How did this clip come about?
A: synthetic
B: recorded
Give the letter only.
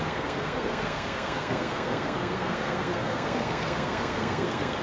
A